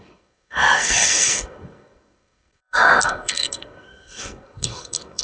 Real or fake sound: fake